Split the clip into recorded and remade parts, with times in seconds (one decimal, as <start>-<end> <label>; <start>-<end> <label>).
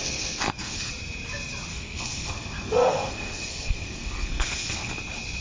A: 0.0-0.9 remade; 0.9-1.7 recorded; 1.7-4.9 remade; 4.9-5.4 recorded